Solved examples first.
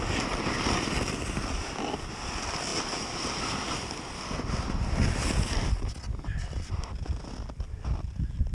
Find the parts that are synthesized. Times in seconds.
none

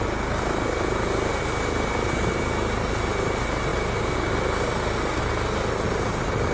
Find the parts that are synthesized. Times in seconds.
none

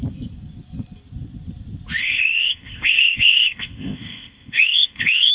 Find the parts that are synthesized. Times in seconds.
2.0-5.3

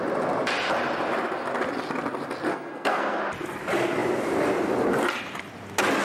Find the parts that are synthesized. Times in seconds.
2.5-3.2

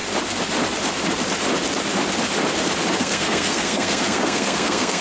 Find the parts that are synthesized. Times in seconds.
3.0-5.0

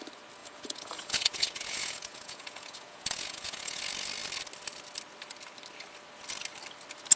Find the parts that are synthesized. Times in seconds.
0.4-3.8